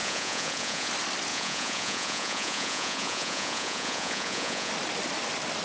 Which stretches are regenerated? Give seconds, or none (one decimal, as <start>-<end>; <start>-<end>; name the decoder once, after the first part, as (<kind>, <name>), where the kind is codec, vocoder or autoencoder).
0.0-0.9 (vocoder, Vocos); 1.3-4.7